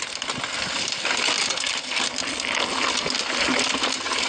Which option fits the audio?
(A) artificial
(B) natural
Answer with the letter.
B